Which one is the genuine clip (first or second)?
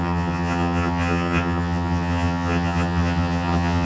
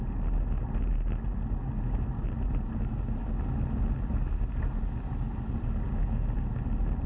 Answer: second